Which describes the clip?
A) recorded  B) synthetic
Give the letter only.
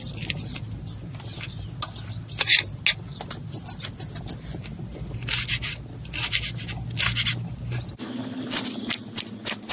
A